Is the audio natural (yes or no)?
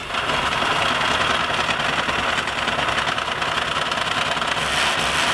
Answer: yes